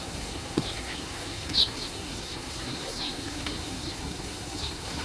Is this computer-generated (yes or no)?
yes